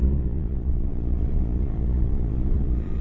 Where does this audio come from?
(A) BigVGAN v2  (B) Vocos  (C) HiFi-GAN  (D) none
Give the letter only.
B